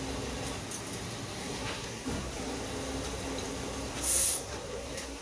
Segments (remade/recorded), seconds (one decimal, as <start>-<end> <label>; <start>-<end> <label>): 0.0-1.4 recorded; 1.4-2.6 remade; 2.6-3.9 recorded; 3.9-5.2 remade

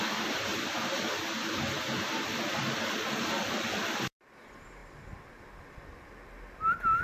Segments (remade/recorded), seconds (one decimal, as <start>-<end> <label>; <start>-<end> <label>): 0.0-0.5 recorded; 0.5-4.2 remade; 4.2-4.8 recorded; 4.8-5.4 remade; 5.4-7.0 recorded

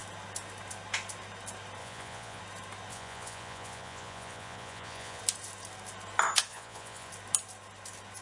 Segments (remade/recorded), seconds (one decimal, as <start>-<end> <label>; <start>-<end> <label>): 0.0-1.8 recorded; 1.8-2.4 remade; 2.4-2.9 recorded; 2.9-5.2 remade; 5.2-6.5 recorded; 6.5-7.1 remade; 7.1-8.2 recorded

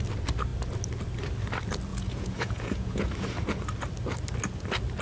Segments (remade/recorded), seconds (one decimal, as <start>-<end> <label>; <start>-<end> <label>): 0.0-1.9 recorded; 1.9-3.1 remade; 3.1-5.0 recorded

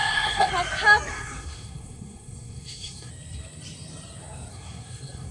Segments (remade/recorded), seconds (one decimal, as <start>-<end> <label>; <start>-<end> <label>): 0.0-0.5 remade; 0.5-1.1 recorded; 1.1-3.1 remade; 3.1-4.5 recorded; 4.5-5.3 remade